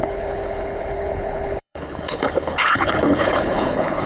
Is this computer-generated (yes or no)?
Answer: yes